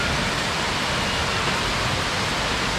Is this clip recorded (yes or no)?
yes